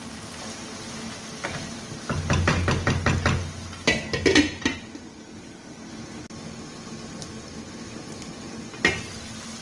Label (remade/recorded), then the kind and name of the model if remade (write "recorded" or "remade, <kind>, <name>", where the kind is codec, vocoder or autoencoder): recorded